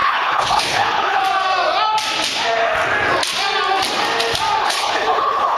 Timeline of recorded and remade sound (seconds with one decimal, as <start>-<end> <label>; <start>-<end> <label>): 0.0-1.2 remade; 1.2-4.6 recorded; 4.6-5.6 remade